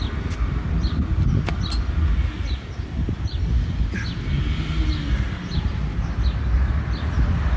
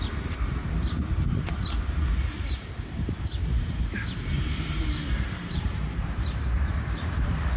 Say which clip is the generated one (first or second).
second